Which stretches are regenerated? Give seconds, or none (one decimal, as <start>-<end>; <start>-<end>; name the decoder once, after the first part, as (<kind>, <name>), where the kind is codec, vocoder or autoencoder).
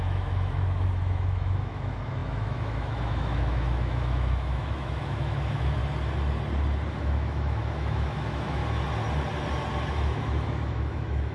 0.0-5.8 (autoencoder, DAC-VAE); 6.9-8.6; 9.9-11.3